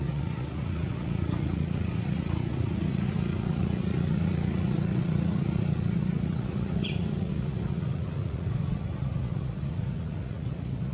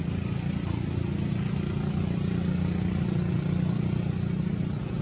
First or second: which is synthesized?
first